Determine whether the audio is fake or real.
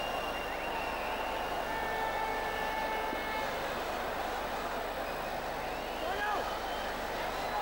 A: real